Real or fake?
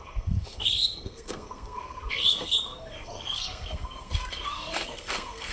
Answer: fake